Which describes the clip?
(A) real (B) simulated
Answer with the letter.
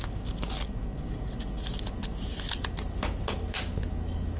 A